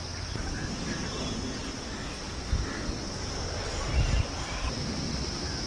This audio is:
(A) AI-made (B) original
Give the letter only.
B